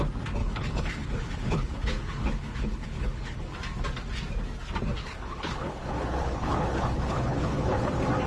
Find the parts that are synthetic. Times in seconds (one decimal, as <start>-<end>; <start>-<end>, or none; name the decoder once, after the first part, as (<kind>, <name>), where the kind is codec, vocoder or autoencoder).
0.4-3.4 (codec, HILCodec); 5.0-7.9